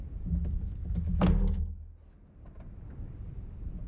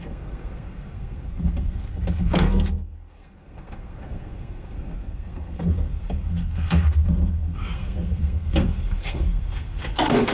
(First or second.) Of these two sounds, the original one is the first